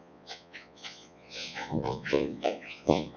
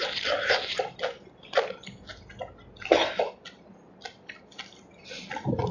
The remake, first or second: first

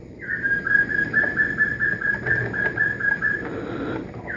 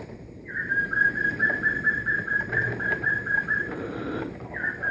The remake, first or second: second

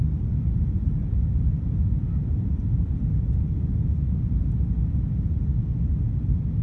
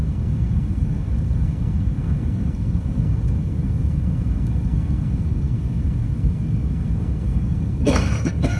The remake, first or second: second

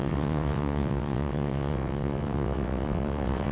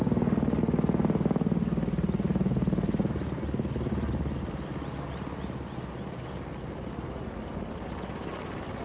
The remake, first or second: first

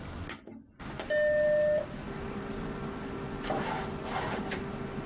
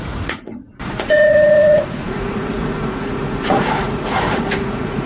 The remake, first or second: second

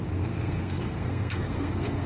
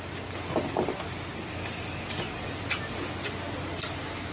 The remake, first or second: first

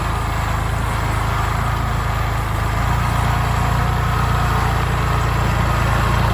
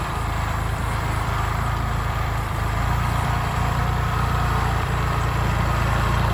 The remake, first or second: second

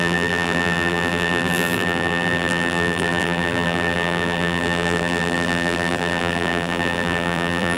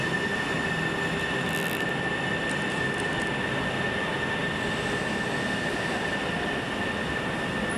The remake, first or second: first